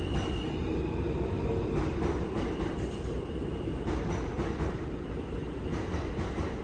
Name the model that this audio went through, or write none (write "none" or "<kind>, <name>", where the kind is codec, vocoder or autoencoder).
none